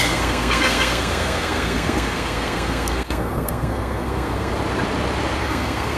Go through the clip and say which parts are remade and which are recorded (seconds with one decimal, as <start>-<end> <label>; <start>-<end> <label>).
0.0-4.5 remade; 4.5-5.4 recorded; 5.4-6.0 remade

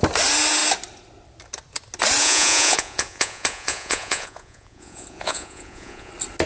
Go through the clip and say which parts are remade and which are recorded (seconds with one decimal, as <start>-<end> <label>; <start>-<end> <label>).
0.0-2.2 recorded; 2.2-6.1 remade; 6.1-6.5 recorded

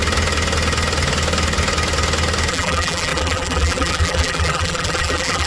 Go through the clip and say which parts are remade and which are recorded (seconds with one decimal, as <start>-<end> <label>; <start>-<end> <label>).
0.0-2.5 recorded; 2.5-5.5 remade

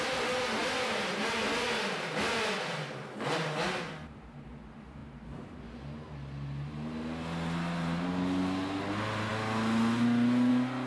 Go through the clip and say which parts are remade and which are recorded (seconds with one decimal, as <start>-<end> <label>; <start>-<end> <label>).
0.0-10.9 recorded

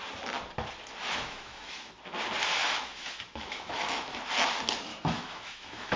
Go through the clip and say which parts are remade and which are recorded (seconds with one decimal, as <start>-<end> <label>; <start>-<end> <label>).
0.0-1.0 recorded; 1.0-1.9 remade; 1.9-2.6 recorded; 2.6-4.2 remade; 4.2-4.9 recorded; 4.9-6.0 remade